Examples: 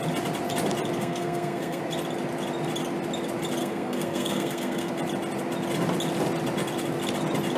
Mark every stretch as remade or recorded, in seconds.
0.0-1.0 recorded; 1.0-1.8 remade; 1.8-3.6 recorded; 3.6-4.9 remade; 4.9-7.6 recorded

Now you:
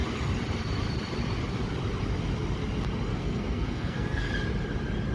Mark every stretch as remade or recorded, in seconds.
0.0-3.1 recorded; 3.1-4.3 remade; 4.3-5.1 recorded

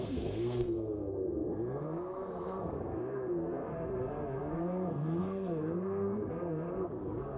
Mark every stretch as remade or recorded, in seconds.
0.0-7.4 remade

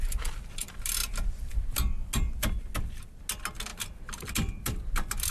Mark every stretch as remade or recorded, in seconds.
0.0-5.3 recorded